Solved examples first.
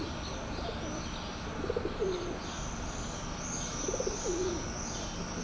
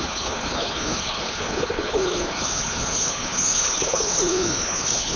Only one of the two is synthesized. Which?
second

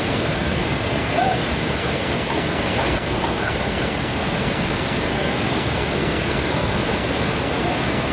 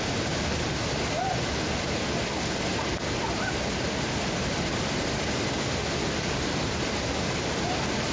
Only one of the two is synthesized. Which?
first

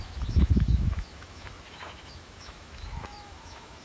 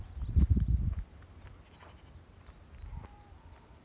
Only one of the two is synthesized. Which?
first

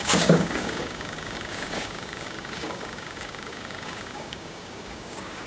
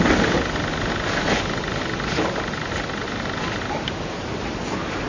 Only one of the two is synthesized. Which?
first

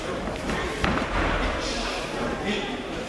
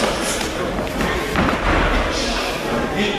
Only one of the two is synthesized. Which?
first